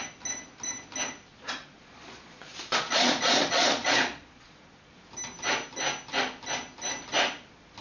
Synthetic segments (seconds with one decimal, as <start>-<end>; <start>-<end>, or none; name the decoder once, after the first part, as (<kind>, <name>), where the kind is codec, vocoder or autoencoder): 1.3-4.9 (vocoder, Vocos)